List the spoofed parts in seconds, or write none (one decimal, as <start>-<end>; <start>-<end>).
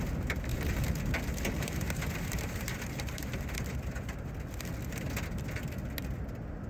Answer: 0.5-4.3